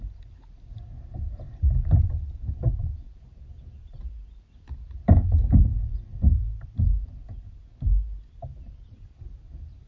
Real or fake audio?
real